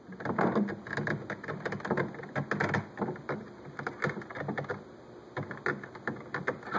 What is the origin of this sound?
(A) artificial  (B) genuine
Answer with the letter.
B